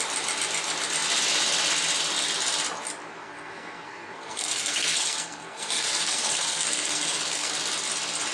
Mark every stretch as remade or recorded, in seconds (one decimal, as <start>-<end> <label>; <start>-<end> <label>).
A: 0.0-3.2 recorded; 3.2-7.5 remade; 7.5-8.3 recorded